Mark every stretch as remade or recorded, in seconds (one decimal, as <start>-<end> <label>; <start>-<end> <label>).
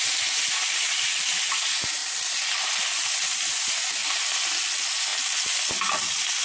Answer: 0.0-6.4 recorded